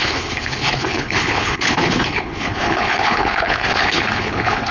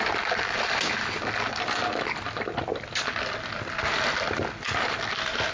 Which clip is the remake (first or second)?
first